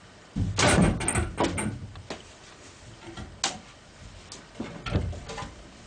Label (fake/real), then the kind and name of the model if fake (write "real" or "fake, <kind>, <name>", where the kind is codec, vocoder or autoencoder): real